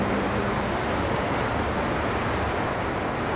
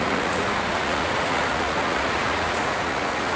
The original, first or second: first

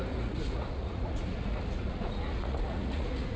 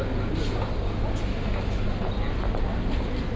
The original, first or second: second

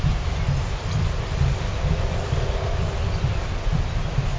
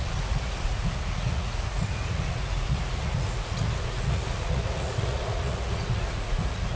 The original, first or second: first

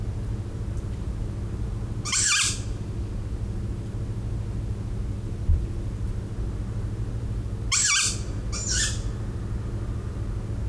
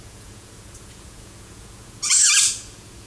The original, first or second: first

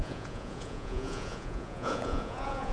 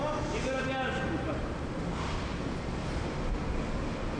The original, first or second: second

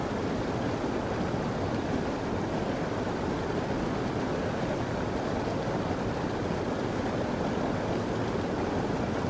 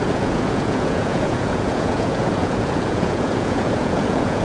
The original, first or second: first